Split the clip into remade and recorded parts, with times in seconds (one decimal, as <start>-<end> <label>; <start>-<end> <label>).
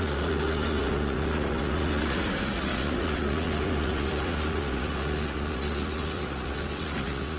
0.0-7.4 remade